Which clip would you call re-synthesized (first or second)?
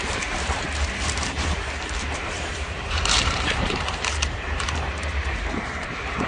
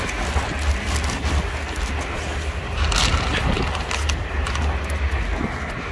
first